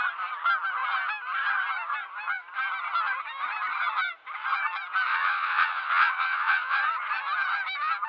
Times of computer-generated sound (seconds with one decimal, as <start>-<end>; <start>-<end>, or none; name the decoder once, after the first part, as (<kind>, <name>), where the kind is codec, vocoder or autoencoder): 5.1-6.8 (vocoder, WaveNeXt)